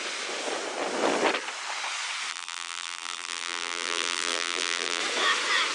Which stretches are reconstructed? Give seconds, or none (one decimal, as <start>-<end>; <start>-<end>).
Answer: 2.3-5.0